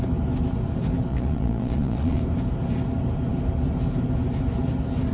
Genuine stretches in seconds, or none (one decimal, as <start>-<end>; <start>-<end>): 0.0-1.1; 2.2-5.1